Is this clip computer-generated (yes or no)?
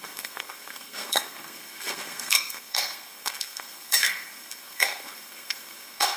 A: yes